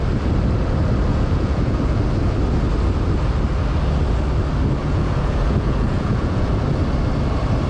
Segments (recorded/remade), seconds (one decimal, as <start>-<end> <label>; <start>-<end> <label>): 0.0-1.1 recorded; 1.1-2.0 remade; 2.0-4.8 recorded; 4.8-6.5 remade; 6.5-7.7 recorded